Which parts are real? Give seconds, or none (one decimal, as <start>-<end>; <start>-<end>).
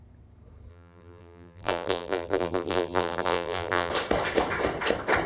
0.0-0.7; 3.9-5.3